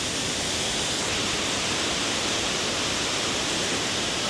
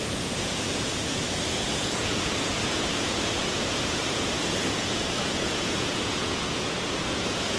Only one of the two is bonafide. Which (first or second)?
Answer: first